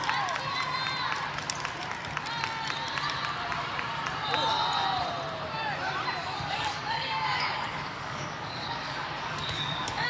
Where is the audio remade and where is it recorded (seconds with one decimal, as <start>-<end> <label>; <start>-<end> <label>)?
0.0-6.2 recorded; 6.2-10.1 remade